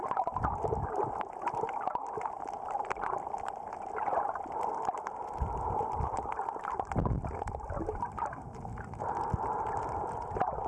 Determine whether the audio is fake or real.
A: real